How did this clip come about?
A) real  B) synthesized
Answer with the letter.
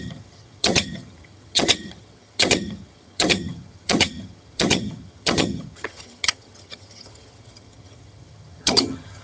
B